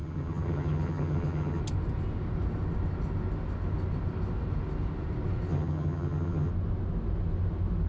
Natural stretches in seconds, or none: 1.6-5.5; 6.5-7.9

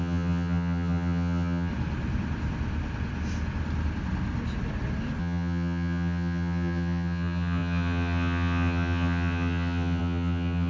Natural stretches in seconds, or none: 1.7-5.2

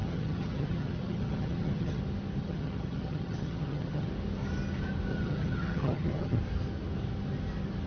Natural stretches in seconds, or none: 2.0-2.4; 4.1-5.1; 6.4-7.9

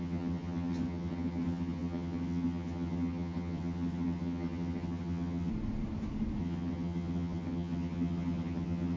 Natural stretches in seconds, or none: 5.5-6.4

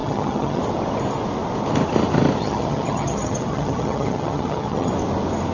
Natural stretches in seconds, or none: 0.6-2.4; 4.9-5.5

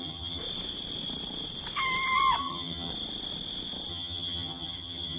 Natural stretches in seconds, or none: 0.4-2.4; 2.9-3.9

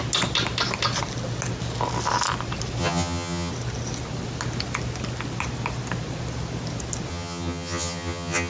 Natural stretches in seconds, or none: 0.0-2.8; 3.5-7.1